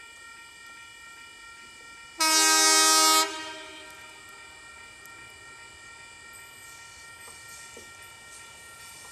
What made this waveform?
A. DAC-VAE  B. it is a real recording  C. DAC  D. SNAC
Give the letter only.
B